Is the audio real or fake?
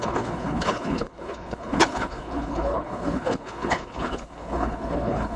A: fake